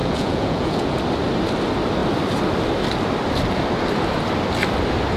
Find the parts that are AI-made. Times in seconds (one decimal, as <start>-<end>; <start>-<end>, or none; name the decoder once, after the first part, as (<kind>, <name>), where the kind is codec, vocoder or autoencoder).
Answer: 0.0-1.0 (vocoder, Vocos)